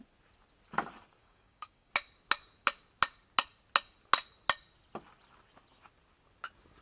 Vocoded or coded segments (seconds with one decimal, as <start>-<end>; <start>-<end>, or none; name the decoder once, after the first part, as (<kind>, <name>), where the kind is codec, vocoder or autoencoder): 1.2-1.9 (codec, DAC)